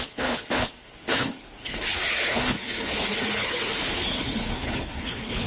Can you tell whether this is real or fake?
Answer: fake